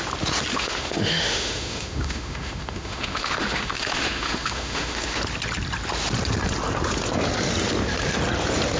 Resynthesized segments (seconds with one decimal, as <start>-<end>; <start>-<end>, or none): 0.5-5.2